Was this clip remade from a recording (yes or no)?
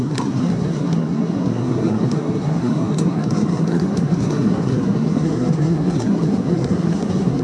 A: yes